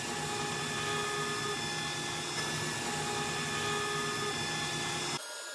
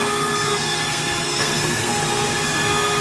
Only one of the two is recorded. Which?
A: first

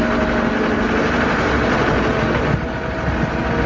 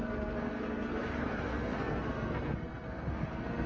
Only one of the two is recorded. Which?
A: first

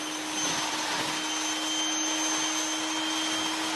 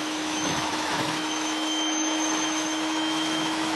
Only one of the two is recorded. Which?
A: first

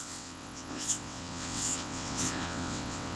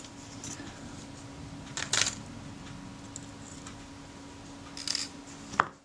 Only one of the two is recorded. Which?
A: second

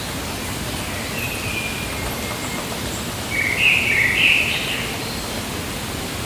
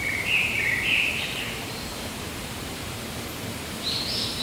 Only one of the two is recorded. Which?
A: first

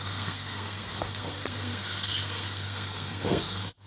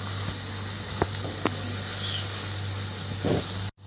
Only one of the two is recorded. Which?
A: second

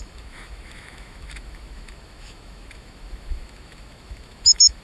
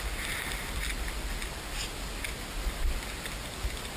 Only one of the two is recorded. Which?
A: second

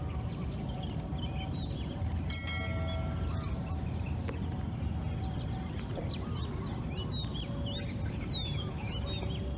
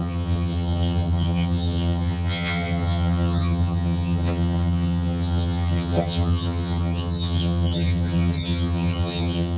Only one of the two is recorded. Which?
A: first